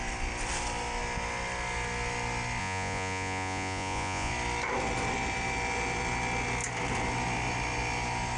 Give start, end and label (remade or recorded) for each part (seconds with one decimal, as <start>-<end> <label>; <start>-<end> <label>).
0.0-2.6 recorded; 2.6-4.3 remade; 4.3-8.4 recorded